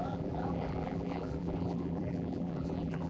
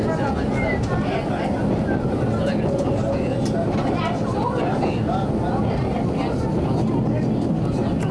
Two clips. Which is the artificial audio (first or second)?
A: first